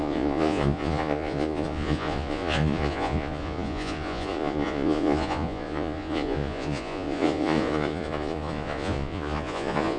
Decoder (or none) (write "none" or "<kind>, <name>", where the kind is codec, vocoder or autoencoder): vocoder, Vocos